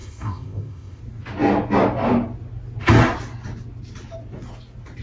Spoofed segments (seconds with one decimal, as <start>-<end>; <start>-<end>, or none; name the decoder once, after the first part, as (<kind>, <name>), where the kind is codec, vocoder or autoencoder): 0.0-1.0 (codec, ZipCodec)